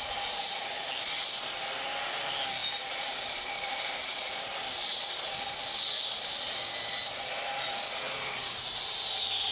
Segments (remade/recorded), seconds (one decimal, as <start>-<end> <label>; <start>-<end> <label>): 0.0-2.6 recorded; 2.6-6.6 remade; 6.6-9.5 recorded